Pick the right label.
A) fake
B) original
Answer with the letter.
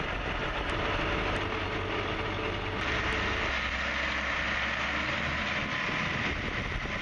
B